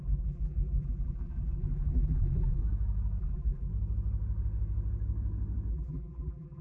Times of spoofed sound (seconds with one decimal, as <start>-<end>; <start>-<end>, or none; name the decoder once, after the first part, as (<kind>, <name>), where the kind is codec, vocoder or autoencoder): 0.0-2.6 (vocoder, BigVGAN v2); 3.2-3.7; 5.7-6.6

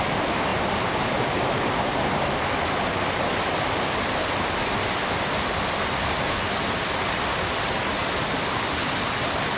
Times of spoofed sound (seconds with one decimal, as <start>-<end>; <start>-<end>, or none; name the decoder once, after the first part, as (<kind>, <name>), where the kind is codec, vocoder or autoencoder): none

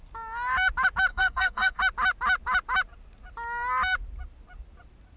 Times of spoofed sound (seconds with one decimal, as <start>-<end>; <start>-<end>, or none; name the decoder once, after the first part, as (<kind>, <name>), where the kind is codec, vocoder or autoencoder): 1.1-1.8 (codec, SNAC)

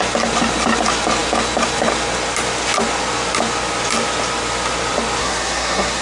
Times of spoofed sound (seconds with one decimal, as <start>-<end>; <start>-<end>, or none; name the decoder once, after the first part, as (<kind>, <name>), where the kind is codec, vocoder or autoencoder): 5.2-6.0 (codec, SNAC)

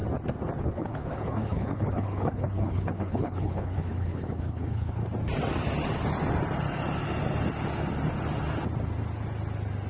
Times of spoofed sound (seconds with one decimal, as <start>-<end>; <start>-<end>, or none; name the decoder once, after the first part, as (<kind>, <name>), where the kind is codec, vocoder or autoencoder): 0.6-5.0 (codec, HILCodec)

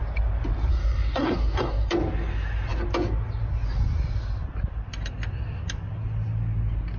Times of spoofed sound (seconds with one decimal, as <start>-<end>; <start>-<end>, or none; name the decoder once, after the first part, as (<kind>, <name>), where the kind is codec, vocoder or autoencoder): 0.7-1.9 (codec, SNAC)